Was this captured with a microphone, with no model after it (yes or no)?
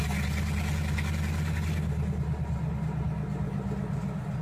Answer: yes